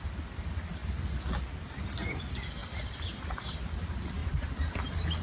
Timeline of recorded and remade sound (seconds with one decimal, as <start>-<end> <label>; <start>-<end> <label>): 0.0-5.2 recorded